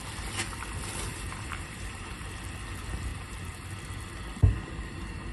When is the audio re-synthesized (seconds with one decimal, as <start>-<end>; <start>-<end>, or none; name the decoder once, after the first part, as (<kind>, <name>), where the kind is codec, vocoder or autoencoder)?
1.1-2.1 (vocoder, BigVGAN v2); 3.1-3.7